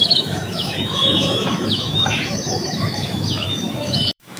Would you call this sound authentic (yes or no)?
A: no